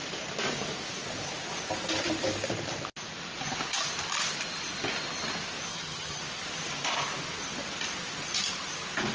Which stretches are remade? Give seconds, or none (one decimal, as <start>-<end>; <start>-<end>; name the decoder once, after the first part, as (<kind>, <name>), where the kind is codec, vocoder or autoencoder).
5.7-6.2 (vocoder, HiFi-GAN)